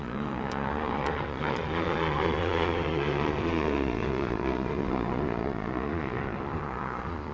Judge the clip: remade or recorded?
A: remade